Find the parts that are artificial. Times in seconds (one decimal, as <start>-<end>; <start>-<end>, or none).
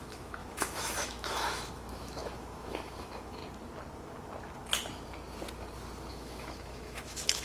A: 0.0-3.4; 6.1-7.4